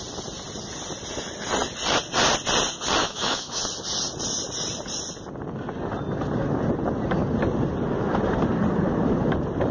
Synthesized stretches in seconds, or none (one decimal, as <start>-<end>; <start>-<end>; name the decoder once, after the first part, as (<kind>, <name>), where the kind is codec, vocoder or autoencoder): 3.0-3.6 (autoencoder, DAC-VAE)